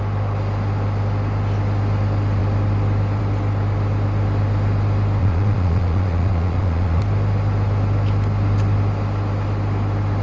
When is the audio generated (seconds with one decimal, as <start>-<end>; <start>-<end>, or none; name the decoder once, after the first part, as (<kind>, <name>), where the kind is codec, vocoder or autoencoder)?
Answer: 5.2-7.0 (vocoder, Vocos)